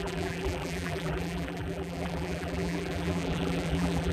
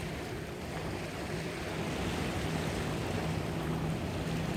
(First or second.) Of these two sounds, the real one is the second